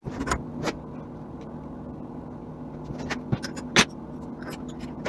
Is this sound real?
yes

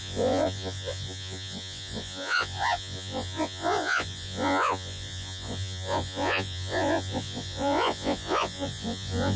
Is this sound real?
no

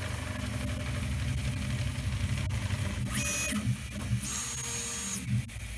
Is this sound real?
yes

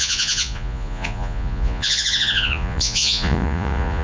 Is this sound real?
no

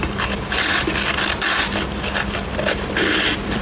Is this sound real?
yes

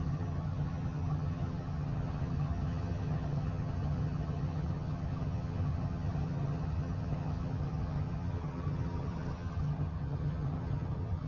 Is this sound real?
no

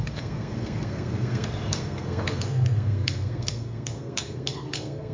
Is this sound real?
no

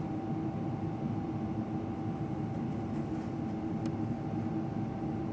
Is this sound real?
yes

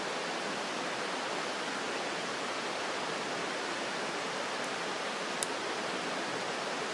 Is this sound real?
yes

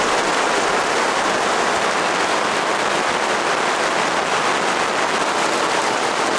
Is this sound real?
yes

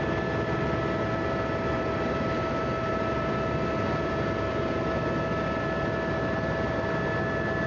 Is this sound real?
yes